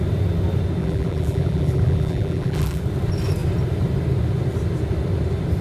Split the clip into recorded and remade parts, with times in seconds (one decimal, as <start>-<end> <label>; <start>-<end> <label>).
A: 0.0-0.8 recorded; 0.8-2.8 remade; 2.8-5.6 recorded